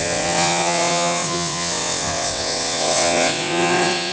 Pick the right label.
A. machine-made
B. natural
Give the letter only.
A